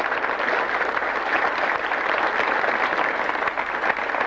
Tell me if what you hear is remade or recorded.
recorded